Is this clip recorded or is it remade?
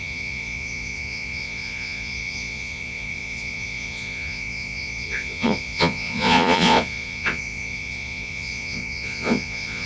remade